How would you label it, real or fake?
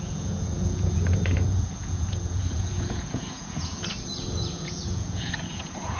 fake